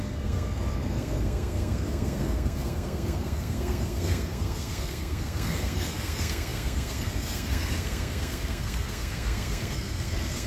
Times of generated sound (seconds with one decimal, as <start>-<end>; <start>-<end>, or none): 0.0-10.5